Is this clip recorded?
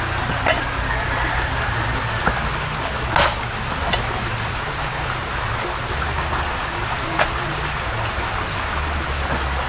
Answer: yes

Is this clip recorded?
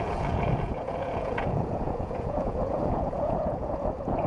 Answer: no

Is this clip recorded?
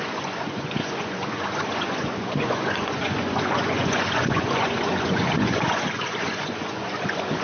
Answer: no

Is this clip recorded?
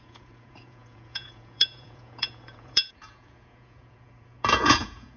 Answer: no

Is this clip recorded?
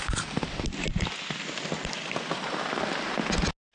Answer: yes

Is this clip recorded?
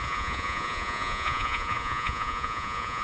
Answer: no